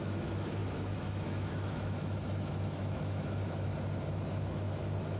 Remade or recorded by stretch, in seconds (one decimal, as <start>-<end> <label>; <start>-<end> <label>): 0.0-3.7 remade; 3.7-4.3 recorded; 4.3-5.2 remade

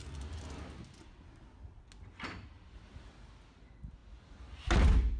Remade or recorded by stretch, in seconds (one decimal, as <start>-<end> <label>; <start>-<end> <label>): 0.0-5.2 recorded

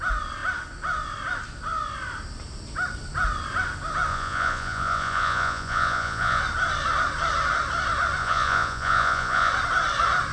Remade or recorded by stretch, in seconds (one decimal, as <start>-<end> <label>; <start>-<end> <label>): 0.0-4.1 recorded; 4.1-6.4 remade; 6.4-8.2 recorded; 8.2-9.5 remade; 9.5-10.3 recorded

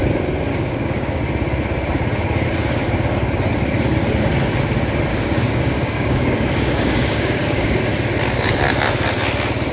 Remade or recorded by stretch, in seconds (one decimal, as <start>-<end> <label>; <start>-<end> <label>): 0.0-0.5 recorded; 0.5-1.2 remade; 1.2-5.1 recorded; 5.1-7.8 remade; 7.8-9.7 recorded

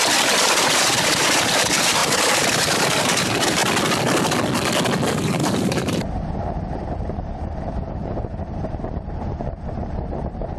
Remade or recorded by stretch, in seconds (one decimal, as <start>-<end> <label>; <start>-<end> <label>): 0.0-3.6 remade; 3.6-5.1 recorded; 5.1-10.6 remade

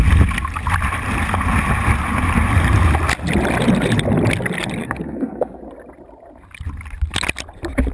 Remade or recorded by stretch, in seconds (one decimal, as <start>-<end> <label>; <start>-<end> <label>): 0.0-4.8 recorded; 4.8-5.6 remade; 5.6-7.9 recorded

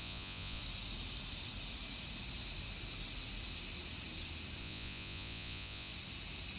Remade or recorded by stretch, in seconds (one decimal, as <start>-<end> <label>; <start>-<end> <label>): 0.0-0.6 remade; 0.6-4.6 recorded; 4.6-5.9 remade; 5.9-6.6 recorded